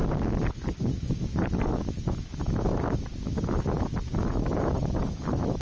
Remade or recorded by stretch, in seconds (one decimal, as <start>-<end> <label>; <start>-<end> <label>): 0.0-0.9 recorded; 0.9-5.6 remade